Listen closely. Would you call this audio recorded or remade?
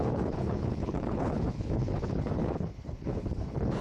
remade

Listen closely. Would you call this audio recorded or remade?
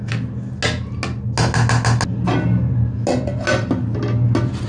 recorded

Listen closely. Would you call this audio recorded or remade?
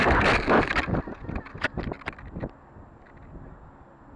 recorded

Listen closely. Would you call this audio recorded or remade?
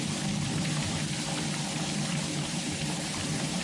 recorded